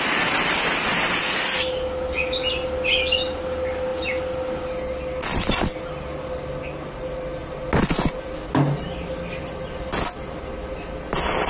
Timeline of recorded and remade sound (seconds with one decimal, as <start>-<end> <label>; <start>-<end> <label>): 0.0-11.5 recorded